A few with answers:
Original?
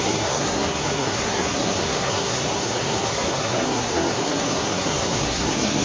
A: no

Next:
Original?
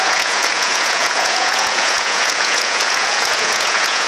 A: no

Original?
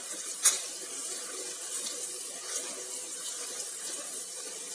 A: yes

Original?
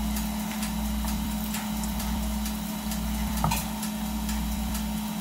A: no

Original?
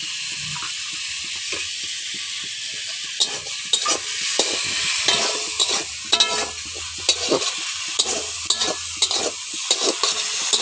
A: yes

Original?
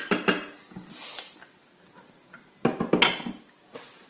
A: yes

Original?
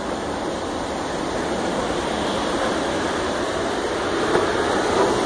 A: yes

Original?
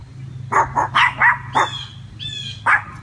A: yes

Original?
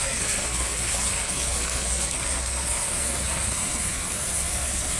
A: no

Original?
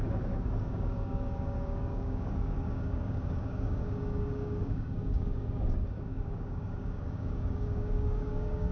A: no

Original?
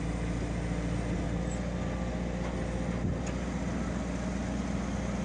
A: yes